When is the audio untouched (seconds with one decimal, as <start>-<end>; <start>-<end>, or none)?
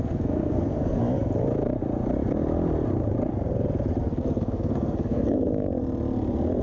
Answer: 1.0-4.0; 5.5-6.6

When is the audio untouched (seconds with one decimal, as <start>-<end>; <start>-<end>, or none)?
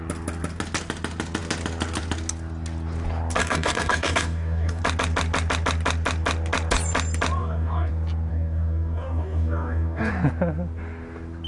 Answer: 0.0-3.4; 4.8-7.4; 7.9-8.3; 10.1-11.5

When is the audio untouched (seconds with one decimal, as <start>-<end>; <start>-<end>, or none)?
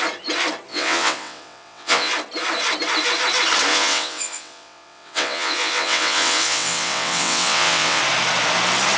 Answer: 0.0-0.7; 2.1-3.7; 8.0-9.0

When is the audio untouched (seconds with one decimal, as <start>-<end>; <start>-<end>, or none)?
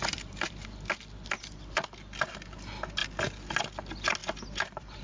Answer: 1.0-4.2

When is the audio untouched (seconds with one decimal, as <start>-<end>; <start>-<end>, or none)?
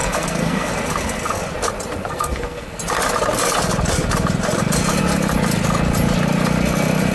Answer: 0.7-2.0; 2.8-7.1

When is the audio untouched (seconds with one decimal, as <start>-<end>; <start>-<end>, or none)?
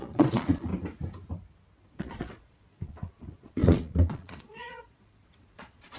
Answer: 0.7-1.9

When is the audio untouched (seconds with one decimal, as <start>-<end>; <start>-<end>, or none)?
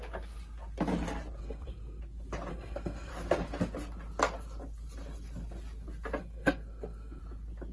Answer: 0.0-1.4; 2.0-2.5; 3.1-6.2; 7.2-7.7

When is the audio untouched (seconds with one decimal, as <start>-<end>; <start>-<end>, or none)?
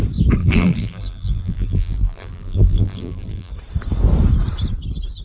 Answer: 0.0-0.4; 3.5-5.2